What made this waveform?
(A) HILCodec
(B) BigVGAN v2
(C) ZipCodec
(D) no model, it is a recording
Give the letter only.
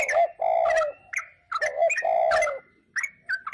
D